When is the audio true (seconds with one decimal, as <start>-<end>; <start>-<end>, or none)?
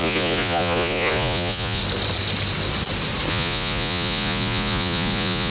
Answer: 1.8-3.3